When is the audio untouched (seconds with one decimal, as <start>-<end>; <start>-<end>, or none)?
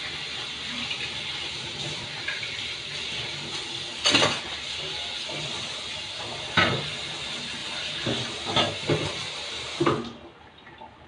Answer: 0.0-11.1